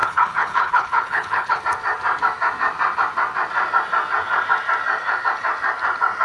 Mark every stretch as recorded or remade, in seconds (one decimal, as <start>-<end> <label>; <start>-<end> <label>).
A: 0.0-1.6 remade; 1.6-6.2 recorded